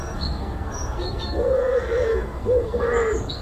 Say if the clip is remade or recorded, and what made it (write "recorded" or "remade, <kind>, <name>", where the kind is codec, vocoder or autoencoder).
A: remade, codec, SNAC